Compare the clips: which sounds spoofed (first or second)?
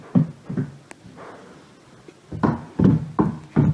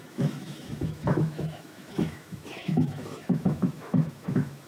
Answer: second